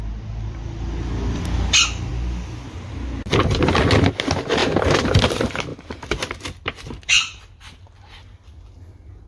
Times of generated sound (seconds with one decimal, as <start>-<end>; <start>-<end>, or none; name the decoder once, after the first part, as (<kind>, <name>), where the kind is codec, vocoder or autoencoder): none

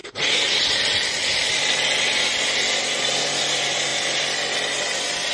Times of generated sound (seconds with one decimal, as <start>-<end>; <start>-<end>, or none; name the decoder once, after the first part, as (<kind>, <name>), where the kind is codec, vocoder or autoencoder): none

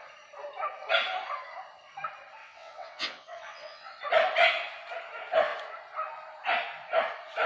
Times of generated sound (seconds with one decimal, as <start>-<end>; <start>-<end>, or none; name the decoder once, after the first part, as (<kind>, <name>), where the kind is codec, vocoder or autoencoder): 2.4-4.0 (vocoder, WaveNeXt)

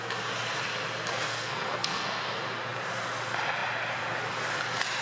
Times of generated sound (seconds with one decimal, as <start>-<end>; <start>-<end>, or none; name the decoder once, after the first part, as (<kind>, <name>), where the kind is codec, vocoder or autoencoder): 1.1-2.2 (codec, SNAC)

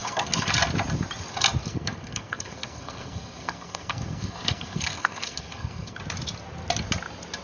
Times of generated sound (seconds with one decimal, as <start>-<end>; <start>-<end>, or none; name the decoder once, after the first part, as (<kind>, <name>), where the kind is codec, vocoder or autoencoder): 0.0-0.5 (codec, SNAC); 1.6-6.0